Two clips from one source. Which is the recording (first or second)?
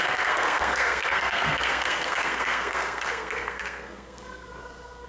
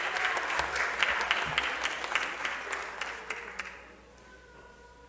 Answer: second